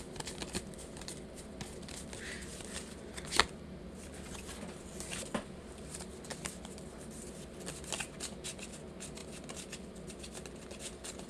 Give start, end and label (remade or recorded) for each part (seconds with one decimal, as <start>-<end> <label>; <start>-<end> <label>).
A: 0.0-2.5 recorded; 2.5-3.2 remade; 3.2-11.3 recorded